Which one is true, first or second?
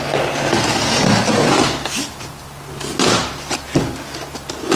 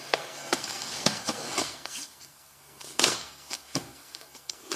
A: first